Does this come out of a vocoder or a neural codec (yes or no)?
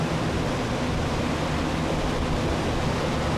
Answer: no